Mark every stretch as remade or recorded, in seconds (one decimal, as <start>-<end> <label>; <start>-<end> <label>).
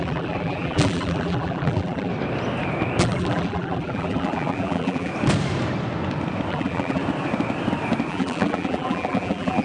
0.0-2.1 remade; 2.1-3.0 recorded; 3.0-5.1 remade; 5.1-6.5 recorded; 6.5-7.0 remade; 7.0-8.1 recorded; 8.1-9.6 remade